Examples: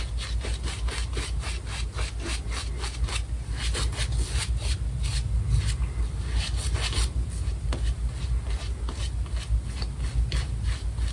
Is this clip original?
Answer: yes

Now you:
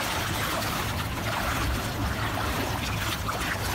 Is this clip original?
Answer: no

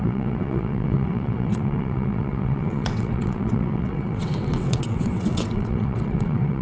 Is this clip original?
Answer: no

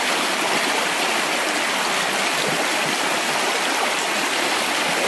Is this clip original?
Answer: yes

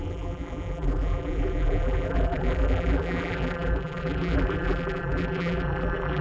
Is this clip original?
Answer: no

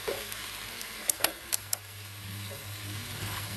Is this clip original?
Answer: no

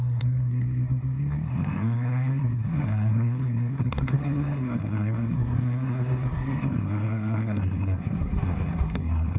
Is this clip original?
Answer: no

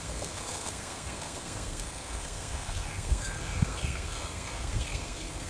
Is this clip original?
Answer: no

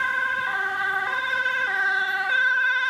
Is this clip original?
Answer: yes